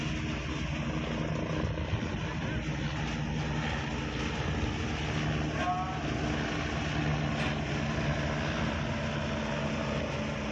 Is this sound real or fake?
real